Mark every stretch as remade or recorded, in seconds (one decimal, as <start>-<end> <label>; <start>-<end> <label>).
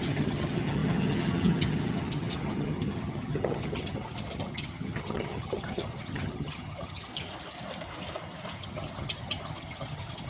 0.0-7.1 remade; 7.1-8.6 recorded; 8.6-10.3 remade